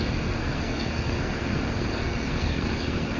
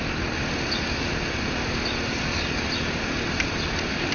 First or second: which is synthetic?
first